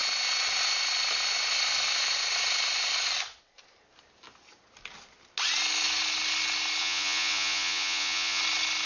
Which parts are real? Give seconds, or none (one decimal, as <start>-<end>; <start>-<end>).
0.0-6.8; 8.4-8.9